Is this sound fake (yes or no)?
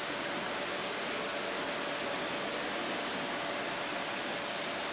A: no